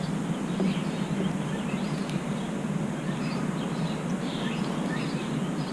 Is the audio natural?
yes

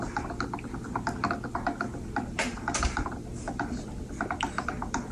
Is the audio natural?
yes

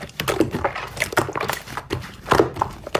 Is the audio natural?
yes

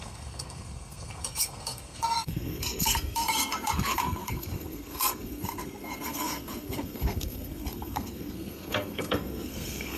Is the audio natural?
no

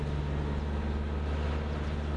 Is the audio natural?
yes